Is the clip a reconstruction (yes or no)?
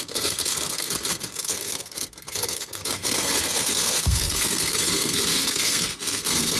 yes